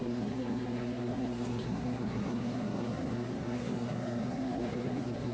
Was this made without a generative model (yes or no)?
no